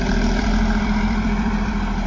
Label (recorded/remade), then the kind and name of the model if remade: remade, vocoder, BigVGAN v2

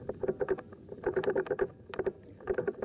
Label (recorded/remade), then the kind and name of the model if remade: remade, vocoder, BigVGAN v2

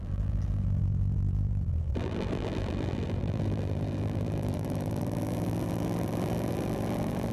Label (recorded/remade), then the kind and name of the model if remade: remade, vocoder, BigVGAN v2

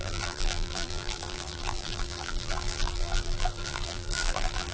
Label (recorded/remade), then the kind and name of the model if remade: remade, vocoder, BigVGAN v2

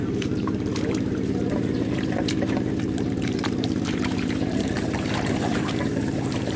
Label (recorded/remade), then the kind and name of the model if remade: remade, vocoder, BigVGAN v2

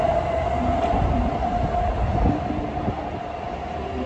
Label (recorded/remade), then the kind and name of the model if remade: recorded